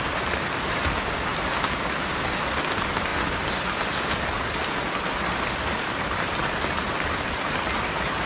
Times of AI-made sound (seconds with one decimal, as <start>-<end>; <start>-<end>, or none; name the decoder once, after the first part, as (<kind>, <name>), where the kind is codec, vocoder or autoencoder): none